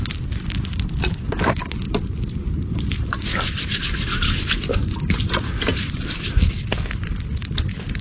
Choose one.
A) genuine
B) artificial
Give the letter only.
A